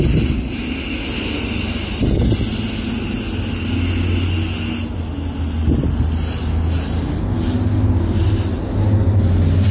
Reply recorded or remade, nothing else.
recorded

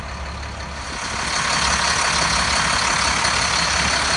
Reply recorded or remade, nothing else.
recorded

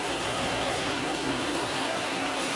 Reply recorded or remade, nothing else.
remade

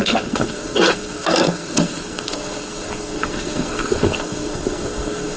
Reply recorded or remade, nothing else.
remade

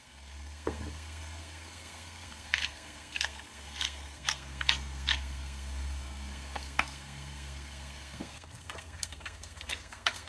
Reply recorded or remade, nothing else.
remade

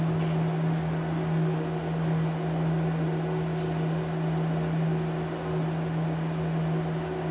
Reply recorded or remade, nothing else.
recorded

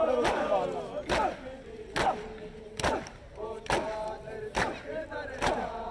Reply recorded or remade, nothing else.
recorded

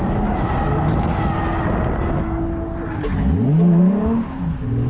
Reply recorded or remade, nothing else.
recorded